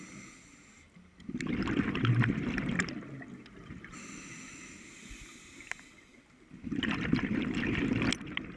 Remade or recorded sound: recorded